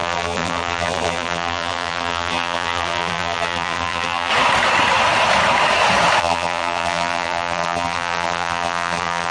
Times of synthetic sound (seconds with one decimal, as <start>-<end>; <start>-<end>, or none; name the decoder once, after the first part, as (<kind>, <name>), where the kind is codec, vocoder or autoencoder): 0.0-4.3 (vocoder, BigVGAN v2); 6.2-9.3

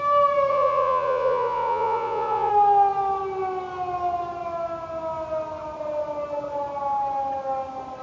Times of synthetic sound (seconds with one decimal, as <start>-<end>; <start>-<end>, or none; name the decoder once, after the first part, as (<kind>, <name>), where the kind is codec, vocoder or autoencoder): 0.5-2.5 (vocoder, Vocos)

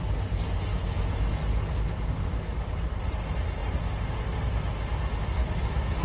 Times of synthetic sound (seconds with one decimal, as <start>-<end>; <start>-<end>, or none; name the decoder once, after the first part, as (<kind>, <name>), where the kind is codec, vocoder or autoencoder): 0.7-1.4 (autoencoder, DAC-VAE); 5.4-6.0